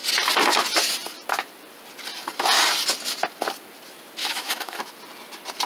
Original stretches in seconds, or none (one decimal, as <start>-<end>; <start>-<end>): 0.0-4.2; 4.8-5.7